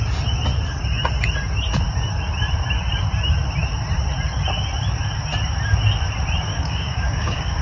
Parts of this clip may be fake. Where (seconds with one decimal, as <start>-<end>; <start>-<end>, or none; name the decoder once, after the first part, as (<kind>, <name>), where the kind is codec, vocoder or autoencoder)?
6.5-7.6 (codec, DAC)